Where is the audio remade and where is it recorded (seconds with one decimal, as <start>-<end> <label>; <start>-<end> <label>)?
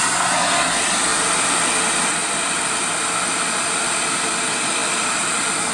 0.0-1.1 recorded; 1.1-1.7 remade; 1.7-2.2 recorded; 2.2-2.8 remade; 2.8-4.8 recorded; 4.8-5.7 remade